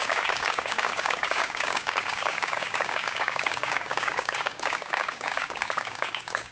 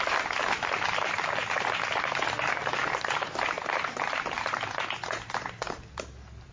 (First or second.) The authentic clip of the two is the second